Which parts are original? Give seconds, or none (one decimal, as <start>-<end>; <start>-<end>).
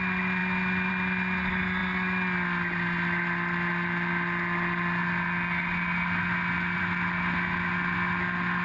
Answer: 0.0-8.6